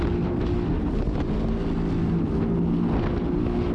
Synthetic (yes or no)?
no